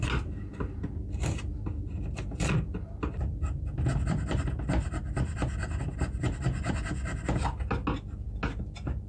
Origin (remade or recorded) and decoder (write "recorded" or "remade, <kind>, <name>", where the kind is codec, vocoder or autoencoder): recorded